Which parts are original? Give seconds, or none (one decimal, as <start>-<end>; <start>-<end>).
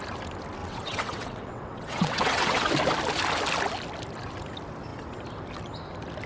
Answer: 0.0-0.6; 2.7-6.3